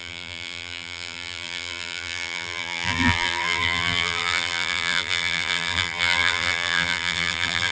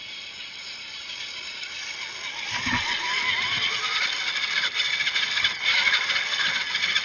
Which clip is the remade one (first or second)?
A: first